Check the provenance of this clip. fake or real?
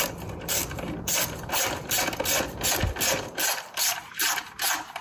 fake